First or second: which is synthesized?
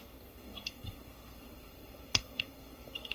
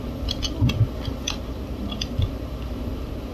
first